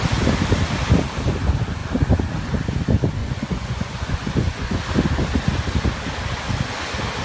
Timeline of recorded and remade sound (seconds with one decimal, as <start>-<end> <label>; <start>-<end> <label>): 0.0-3.2 recorded; 3.2-4.8 remade; 4.8-7.2 recorded